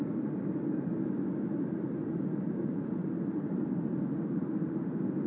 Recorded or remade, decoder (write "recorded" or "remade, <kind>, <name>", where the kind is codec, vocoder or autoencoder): recorded